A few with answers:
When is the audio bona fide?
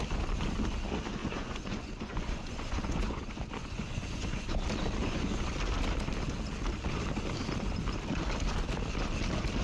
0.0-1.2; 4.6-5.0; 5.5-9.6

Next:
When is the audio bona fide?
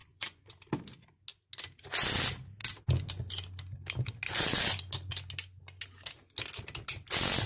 0.5-7.5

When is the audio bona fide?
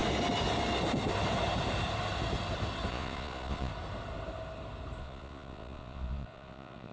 0.0-2.9; 3.7-5.0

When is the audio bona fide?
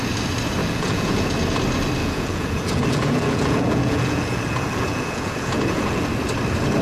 0.0-0.6; 1.4-2.0; 6.1-6.8